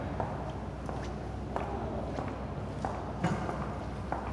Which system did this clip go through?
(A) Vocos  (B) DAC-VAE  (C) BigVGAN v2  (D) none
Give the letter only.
D